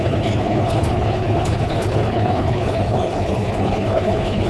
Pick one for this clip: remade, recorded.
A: remade